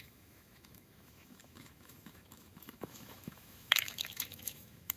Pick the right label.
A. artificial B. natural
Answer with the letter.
A